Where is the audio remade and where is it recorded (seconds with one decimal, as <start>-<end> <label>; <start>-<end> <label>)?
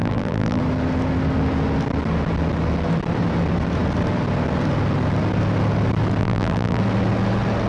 0.0-0.6 remade; 0.6-6.2 recorded; 6.2-6.8 remade; 6.8-7.7 recorded